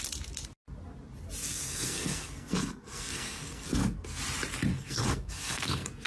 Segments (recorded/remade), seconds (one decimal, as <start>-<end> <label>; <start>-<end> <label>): 0.0-1.4 recorded; 1.4-4.2 remade; 4.2-4.7 recorded; 4.7-6.1 remade